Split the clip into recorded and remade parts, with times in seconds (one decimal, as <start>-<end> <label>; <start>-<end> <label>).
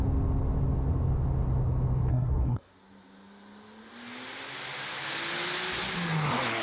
0.0-2.1 recorded; 2.1-2.7 remade; 2.7-6.6 recorded